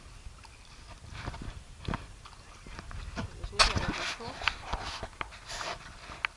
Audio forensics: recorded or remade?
recorded